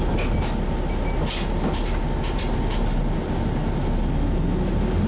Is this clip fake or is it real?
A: real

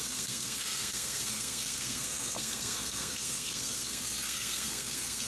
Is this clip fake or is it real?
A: fake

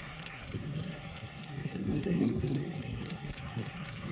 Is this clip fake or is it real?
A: fake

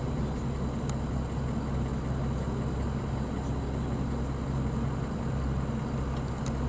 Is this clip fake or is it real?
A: real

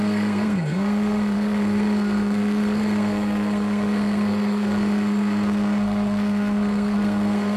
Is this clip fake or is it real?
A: fake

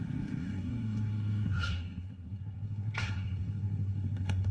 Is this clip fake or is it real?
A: fake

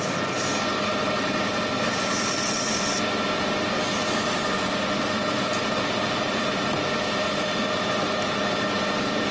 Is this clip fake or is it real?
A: real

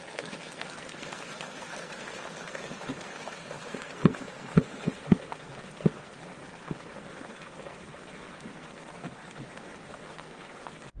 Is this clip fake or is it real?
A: fake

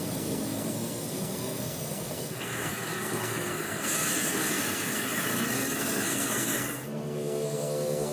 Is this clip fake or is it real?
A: fake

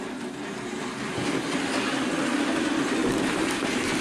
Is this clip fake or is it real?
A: real